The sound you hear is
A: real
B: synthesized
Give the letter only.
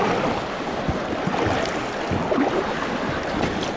A